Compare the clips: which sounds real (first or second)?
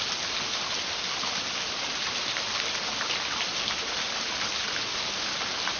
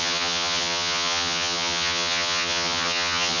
first